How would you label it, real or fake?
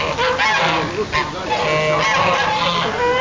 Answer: real